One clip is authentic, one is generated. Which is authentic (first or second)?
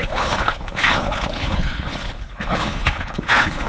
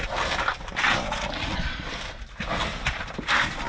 second